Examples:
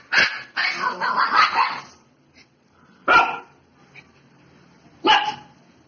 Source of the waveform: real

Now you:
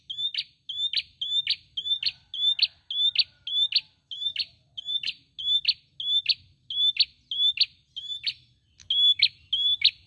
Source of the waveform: real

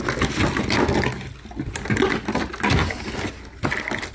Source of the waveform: real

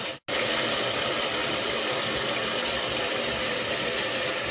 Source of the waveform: real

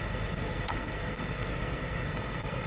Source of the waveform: fake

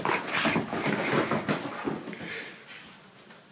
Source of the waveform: real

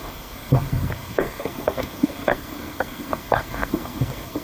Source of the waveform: fake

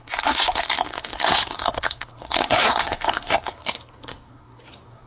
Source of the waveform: fake